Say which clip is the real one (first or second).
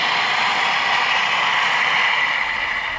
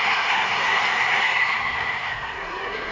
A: first